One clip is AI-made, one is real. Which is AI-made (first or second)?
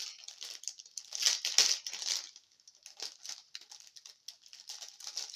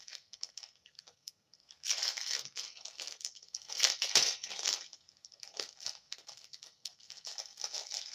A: second